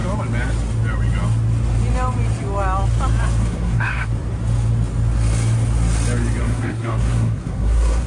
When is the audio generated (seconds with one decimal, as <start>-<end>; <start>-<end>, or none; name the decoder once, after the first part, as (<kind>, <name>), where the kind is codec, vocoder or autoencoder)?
3.4-4.1 (codec, SNAC); 6.4-8.1